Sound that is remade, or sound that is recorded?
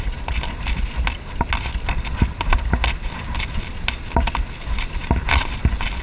recorded